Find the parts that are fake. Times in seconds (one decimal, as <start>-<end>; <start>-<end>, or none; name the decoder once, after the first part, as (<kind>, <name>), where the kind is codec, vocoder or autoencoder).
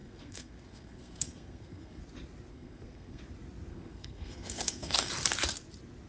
0.0-2.0 (codec, SNAC); 2.5-3.2; 3.7-5.1